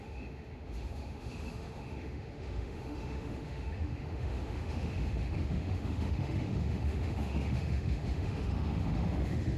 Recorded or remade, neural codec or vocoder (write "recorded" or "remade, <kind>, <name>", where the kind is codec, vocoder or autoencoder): remade, autoencoder, DAC-VAE